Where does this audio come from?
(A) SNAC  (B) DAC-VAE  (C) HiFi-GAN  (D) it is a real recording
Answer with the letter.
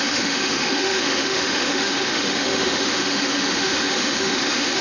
B